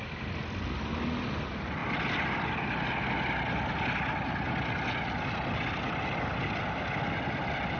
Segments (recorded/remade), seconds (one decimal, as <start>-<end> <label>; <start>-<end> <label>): 0.0-7.8 recorded